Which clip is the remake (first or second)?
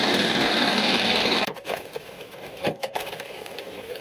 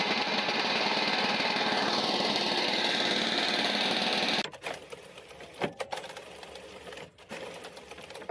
first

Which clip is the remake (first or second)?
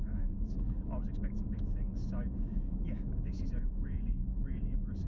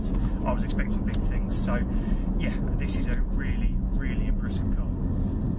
first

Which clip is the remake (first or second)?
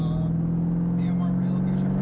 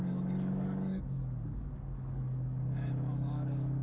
second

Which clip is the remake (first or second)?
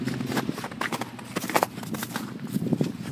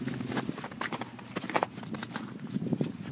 second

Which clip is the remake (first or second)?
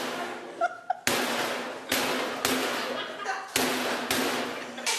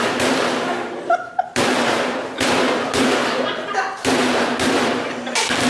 second